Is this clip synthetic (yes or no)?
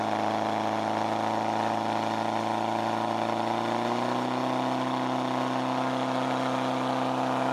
no